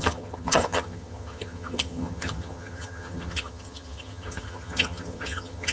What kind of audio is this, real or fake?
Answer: fake